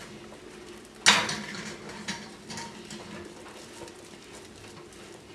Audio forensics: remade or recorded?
recorded